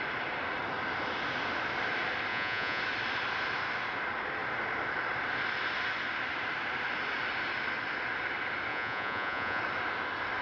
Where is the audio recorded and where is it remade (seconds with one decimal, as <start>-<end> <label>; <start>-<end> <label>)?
0.0-2.3 recorded; 2.3-2.8 remade; 2.8-8.7 recorded; 8.7-9.6 remade; 9.6-10.4 recorded